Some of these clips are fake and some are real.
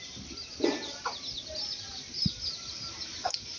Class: real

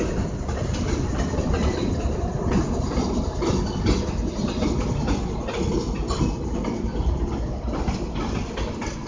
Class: real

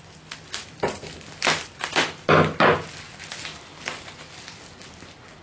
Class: real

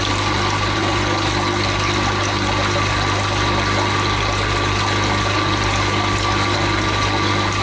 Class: real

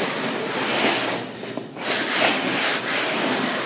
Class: real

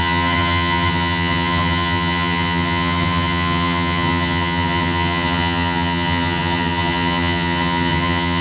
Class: fake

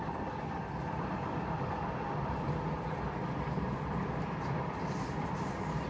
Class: real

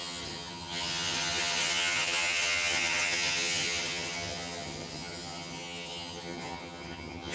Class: fake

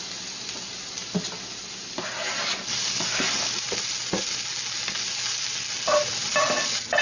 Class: real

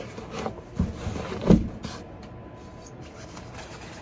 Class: real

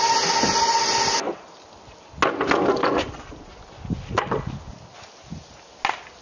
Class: real